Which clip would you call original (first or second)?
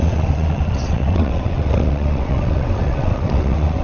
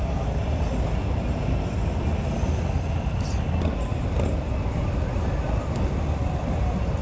second